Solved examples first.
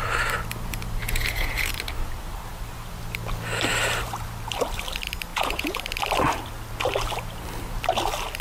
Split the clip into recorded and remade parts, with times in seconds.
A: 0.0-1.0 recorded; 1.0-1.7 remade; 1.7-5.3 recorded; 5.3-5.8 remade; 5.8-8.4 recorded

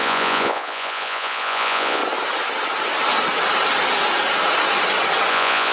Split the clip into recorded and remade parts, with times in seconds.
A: 0.0-2.0 remade; 2.0-5.3 recorded; 5.3-5.7 remade

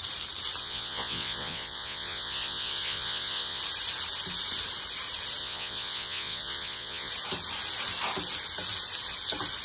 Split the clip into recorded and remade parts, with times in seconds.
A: 0.0-0.6 recorded; 0.6-3.6 remade; 3.6-5.4 recorded; 5.4-7.1 remade; 7.1-9.6 recorded

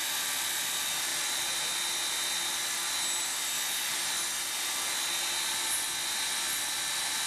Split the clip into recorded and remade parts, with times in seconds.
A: 0.0-7.3 recorded

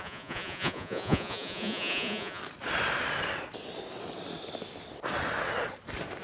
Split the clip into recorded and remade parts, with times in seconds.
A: 0.0-2.4 remade; 2.4-6.2 recorded

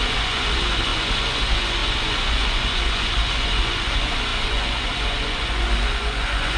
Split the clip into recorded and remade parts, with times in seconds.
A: 0.0-6.6 remade

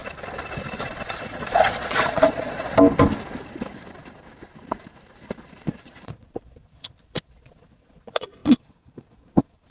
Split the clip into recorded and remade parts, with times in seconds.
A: 0.0-0.7 recorded; 0.7-2.7 remade; 2.7-5.6 recorded; 5.6-9.7 remade